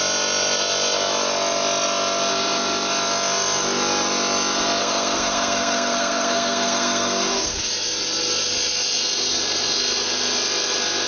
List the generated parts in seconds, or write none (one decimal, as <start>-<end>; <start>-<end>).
4.8-7.7